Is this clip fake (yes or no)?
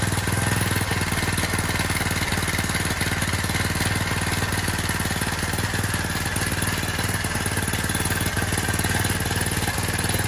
no